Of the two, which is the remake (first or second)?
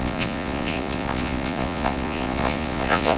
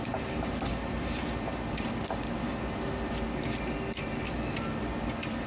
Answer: first